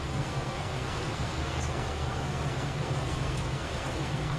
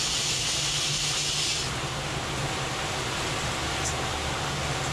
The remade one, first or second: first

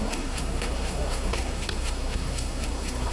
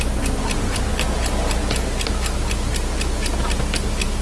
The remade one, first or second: first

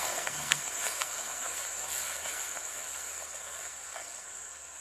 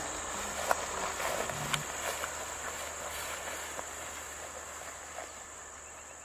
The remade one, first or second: first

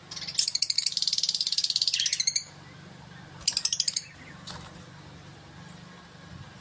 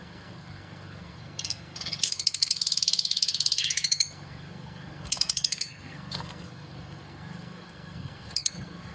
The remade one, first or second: second